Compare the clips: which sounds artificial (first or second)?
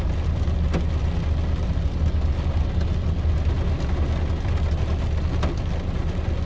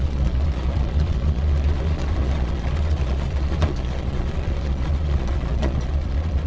second